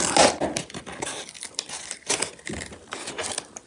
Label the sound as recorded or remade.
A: recorded